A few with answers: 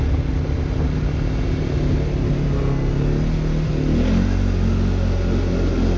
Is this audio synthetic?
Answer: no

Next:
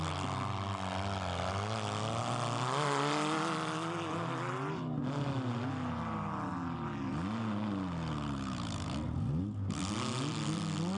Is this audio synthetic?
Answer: no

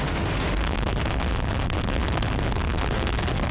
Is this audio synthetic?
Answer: yes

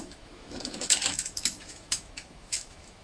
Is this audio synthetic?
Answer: yes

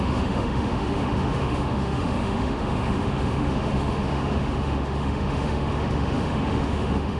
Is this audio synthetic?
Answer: yes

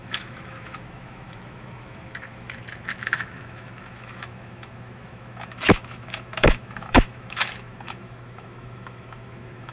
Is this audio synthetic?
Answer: yes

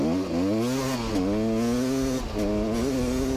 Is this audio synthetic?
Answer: no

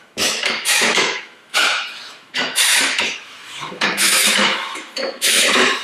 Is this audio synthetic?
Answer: yes